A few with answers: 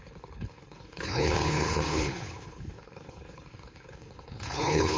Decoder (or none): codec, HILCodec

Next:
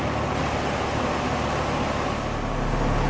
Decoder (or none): none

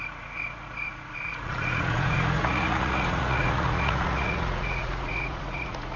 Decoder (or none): vocoder, Vocos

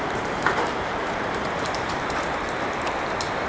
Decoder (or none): vocoder, BigVGAN v2